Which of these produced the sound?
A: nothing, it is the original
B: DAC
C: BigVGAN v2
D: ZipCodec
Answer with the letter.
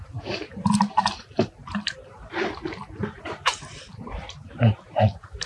C